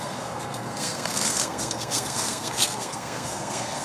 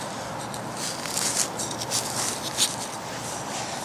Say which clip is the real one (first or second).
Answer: second